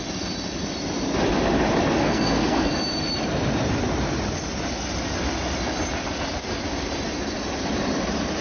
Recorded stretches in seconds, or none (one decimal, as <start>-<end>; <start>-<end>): 0.0-2.0; 2.7-8.4

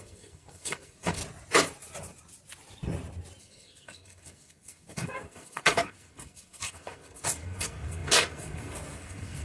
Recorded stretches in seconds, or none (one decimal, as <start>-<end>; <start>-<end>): 1.2-3.4

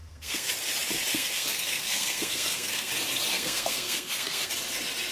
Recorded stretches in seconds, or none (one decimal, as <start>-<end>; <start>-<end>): 0.5-1.1; 2.9-3.3; 4.5-5.1

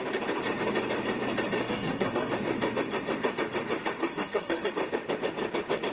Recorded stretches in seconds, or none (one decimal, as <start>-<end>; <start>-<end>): 0.0-1.6; 2.3-4.0; 4.7-5.9

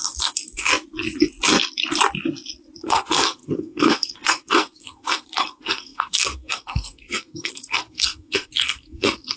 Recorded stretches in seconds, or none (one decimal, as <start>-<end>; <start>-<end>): 0.7-2.8

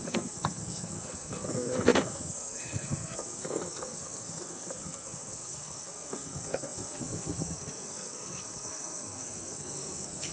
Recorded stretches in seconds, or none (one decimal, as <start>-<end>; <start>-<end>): none

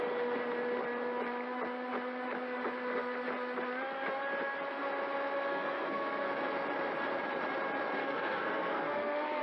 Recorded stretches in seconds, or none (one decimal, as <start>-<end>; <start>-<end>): 0.0-5.5; 6.3-8.0

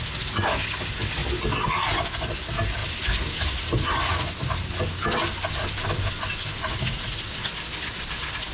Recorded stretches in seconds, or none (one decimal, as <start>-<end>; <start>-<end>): 0.0-8.5